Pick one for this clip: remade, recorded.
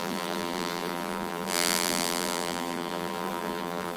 remade